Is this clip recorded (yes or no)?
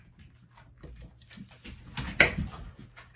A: yes